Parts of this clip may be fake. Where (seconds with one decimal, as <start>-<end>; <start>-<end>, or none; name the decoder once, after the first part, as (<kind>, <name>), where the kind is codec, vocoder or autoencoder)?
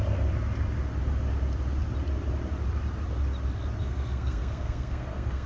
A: 3.8-5.5 (codec, SNAC)